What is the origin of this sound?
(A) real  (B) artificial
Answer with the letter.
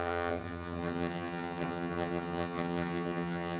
B